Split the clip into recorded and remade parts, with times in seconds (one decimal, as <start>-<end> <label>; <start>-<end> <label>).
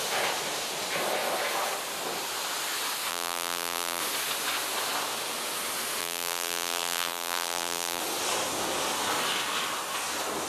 0.0-3.1 recorded; 3.1-4.0 remade; 4.0-6.0 recorded; 6.0-8.0 remade; 8.0-10.5 recorded